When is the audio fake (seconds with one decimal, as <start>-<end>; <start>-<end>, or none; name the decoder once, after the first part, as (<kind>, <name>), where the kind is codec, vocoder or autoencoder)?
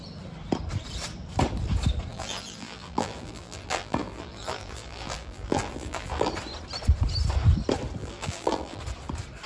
2.1-6.3 (vocoder, BigVGAN v2); 8.0-8.8